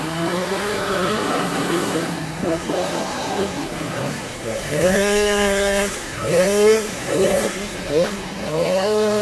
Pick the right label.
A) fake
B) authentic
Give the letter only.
A